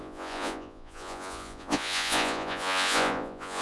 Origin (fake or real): fake